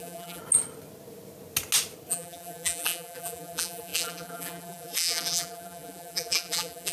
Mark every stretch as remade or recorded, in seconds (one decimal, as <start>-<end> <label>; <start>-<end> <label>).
0.0-0.4 remade; 0.4-2.1 recorded; 2.1-6.9 remade